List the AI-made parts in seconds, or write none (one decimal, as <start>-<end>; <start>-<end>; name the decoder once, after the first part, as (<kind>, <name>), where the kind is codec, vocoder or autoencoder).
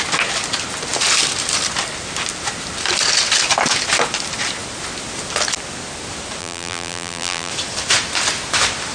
6.4-7.5 (vocoder, BigVGAN v2)